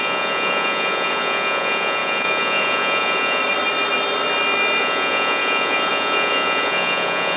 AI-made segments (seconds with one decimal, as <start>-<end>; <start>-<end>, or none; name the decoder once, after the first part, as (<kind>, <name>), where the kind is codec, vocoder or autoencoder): 0.0-3.4 (vocoder, Vocos); 4.8-7.4